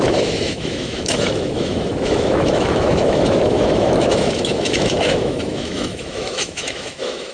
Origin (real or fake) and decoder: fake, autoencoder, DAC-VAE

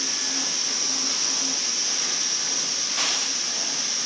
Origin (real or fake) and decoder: real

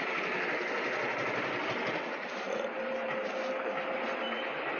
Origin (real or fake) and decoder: real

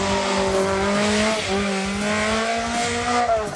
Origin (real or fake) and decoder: real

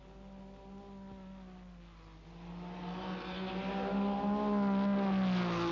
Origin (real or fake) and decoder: real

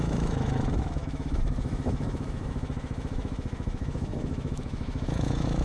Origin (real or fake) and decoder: fake, autoencoder, DAC-VAE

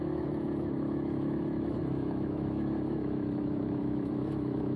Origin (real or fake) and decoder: fake, autoencoder, DAC-VAE